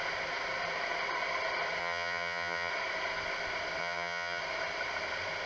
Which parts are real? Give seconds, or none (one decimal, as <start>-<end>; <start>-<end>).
0.0-1.8; 2.7-3.8; 4.4-5.5